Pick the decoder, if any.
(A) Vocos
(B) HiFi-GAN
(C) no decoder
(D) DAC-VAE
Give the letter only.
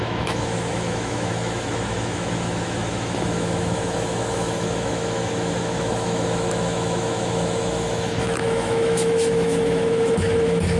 D